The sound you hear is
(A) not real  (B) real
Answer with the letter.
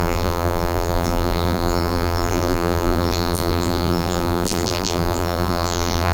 A